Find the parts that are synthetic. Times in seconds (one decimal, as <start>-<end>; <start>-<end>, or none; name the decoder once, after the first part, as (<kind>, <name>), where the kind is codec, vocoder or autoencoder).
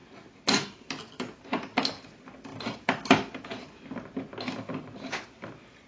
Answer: none